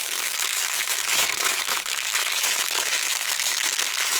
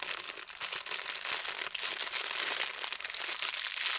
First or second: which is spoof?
first